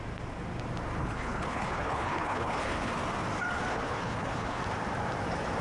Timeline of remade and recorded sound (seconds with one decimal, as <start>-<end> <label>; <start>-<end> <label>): 0.0-1.0 recorded; 1.0-2.9 remade; 2.9-3.7 recorded; 3.7-4.6 remade; 4.6-5.6 recorded